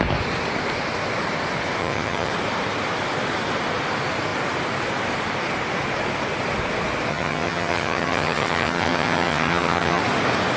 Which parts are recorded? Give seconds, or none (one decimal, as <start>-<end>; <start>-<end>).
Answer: 0.0-1.8; 2.3-7.1; 10.0-10.6

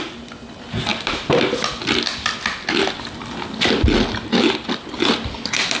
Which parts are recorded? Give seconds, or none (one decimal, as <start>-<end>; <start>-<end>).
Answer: 0.0-5.8

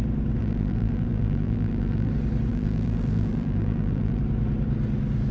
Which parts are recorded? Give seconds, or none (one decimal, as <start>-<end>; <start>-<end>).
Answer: 0.0-0.4; 2.1-2.5; 4.2-5.3